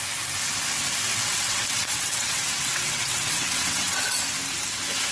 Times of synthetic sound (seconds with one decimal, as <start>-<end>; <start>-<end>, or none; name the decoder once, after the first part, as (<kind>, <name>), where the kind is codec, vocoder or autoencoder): 1.1-4.2 (vocoder, WaveNeXt)